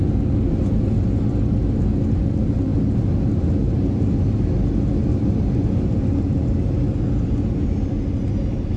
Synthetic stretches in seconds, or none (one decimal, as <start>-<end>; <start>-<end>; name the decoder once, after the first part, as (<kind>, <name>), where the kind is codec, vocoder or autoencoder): none